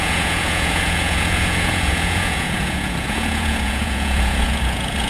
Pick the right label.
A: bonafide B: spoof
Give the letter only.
B